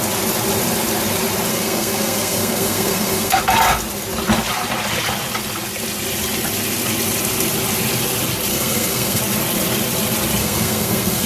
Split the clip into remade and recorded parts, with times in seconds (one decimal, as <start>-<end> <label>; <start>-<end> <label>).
0.0-1.5 recorded; 1.5-3.4 remade; 3.4-8.5 recorded; 8.5-9.2 remade; 9.2-10.4 recorded; 10.4-11.3 remade